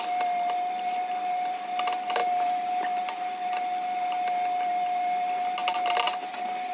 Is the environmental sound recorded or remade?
recorded